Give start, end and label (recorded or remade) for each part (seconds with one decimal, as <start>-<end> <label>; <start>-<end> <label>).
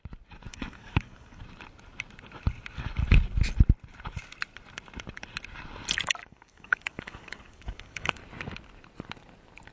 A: 0.0-0.5 recorded; 0.5-1.4 remade; 1.4-6.2 recorded; 6.2-8.2 remade; 8.2-9.7 recorded